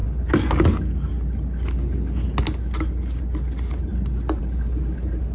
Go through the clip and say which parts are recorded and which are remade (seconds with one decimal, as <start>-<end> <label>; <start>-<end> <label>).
0.0-5.3 recorded